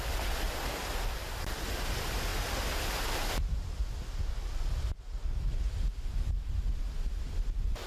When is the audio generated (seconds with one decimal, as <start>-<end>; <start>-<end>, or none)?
none